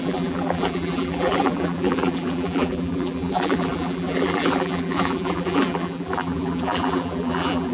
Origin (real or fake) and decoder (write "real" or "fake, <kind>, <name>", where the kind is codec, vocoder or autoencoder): fake, vocoder, BigVGAN v2